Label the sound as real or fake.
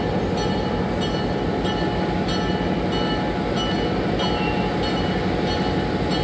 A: real